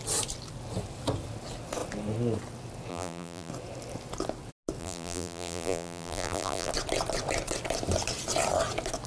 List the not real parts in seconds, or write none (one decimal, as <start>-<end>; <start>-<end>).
2.9-3.5; 4.8-6.7